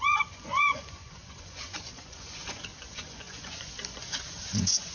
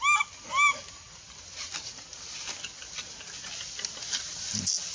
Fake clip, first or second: first